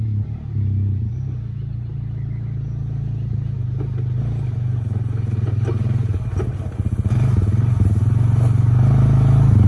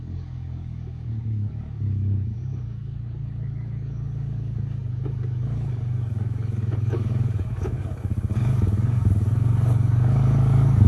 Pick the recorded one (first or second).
first